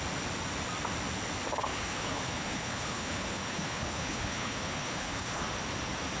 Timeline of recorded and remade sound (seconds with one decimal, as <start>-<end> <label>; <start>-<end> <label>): 0.0-1.7 recorded; 1.7-5.4 remade; 5.4-6.2 recorded